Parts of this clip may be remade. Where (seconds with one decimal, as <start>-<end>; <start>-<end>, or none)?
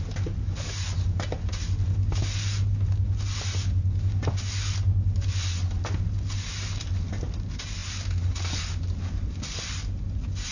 none